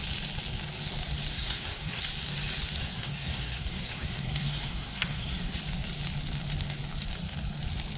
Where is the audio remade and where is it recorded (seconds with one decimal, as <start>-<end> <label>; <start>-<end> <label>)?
0.0-1.3 recorded; 1.3-2.0 remade; 2.0-2.8 recorded; 2.8-5.6 remade; 5.6-8.0 recorded